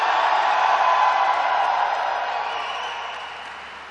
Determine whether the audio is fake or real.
real